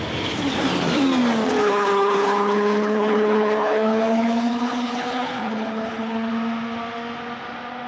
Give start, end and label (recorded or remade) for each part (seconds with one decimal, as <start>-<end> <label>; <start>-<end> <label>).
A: 0.0-1.6 recorded; 1.6-6.3 remade; 6.3-7.9 recorded